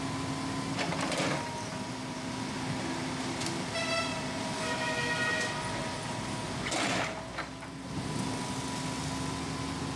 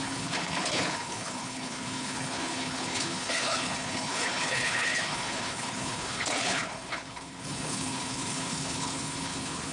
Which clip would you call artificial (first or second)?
second